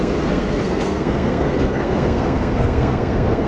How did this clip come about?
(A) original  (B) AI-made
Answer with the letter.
B